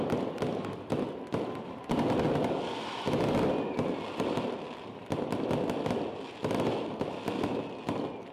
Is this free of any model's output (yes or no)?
yes